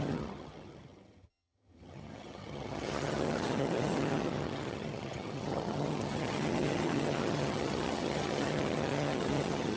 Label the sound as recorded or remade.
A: remade